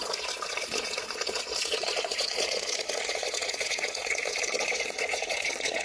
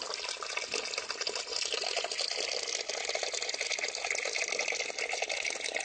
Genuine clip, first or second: second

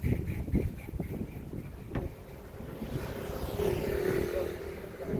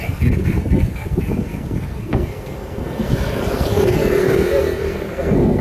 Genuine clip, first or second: first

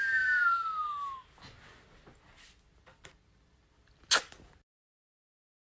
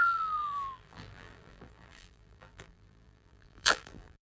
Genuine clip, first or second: first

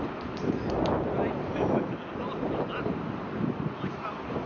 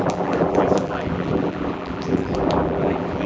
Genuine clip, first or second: first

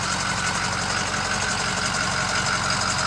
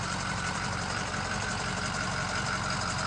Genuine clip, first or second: first